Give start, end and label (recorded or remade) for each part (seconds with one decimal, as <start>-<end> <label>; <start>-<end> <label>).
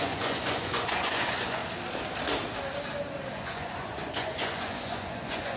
0.0-1.6 remade; 1.6-3.3 recorded; 3.3-5.6 remade